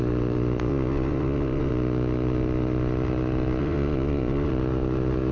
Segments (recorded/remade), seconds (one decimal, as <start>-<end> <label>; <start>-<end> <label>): 0.0-0.7 recorded; 0.7-1.7 remade; 1.7-3.6 recorded; 3.6-4.5 remade; 4.5-5.3 recorded